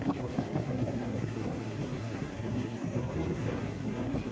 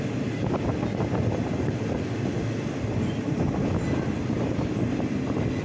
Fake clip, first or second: first